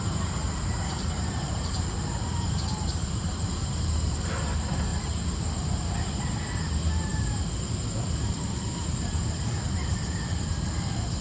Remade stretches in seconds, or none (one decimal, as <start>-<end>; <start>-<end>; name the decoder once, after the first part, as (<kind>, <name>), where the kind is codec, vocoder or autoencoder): 0.4-4.3 (vocoder, BigVGAN v2); 4.9-5.6; 7.1-9.9